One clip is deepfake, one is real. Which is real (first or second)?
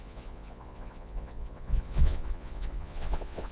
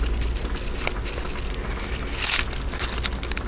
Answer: second